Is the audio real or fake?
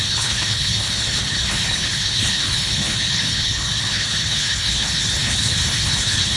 fake